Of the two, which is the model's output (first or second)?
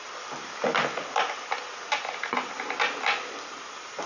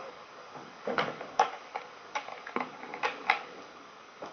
second